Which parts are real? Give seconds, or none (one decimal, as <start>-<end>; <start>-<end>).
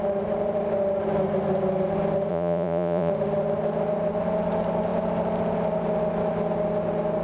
0.0-2.3; 3.1-7.2